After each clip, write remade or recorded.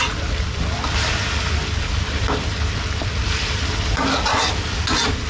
recorded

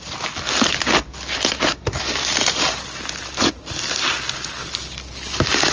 recorded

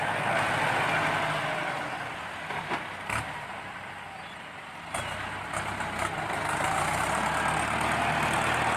recorded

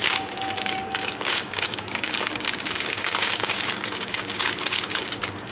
remade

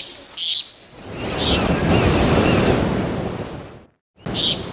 recorded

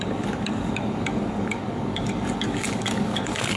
remade